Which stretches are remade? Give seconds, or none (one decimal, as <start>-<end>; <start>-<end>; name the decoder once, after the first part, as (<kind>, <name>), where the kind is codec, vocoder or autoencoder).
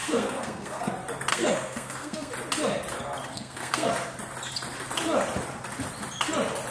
0.0-0.9 (codec, SNAC); 1.3-2.3; 3.3-3.9